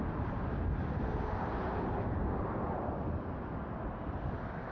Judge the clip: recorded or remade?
recorded